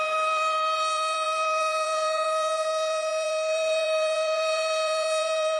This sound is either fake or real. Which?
fake